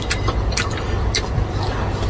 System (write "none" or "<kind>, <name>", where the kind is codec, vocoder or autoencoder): none